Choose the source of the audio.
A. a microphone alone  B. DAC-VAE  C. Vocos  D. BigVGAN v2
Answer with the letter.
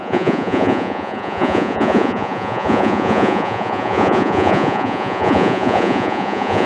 C